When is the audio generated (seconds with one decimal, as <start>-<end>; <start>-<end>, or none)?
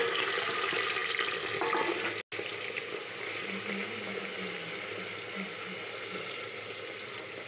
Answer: none